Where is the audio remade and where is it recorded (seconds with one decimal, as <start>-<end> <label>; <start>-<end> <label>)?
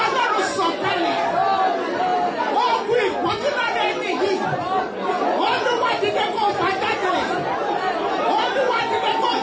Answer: 0.0-9.4 recorded